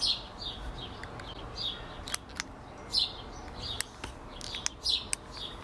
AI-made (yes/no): no